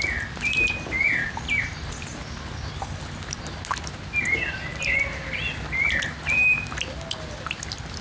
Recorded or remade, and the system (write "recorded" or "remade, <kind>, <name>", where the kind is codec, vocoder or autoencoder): recorded